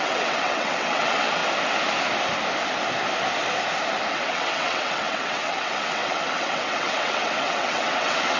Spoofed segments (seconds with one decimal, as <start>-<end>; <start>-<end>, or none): 0.0-1.4; 4.1-8.4